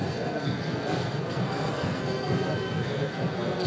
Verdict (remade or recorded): remade